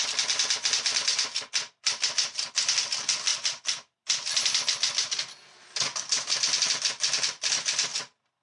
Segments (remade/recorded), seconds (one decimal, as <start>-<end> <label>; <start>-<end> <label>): 0.0-8.4 recorded